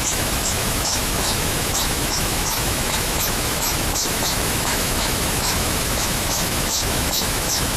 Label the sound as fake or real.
fake